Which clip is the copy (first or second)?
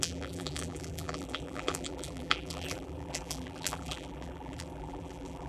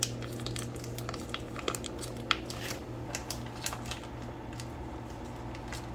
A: first